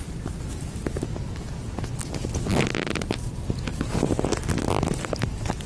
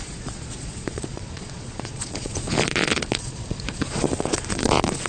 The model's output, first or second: second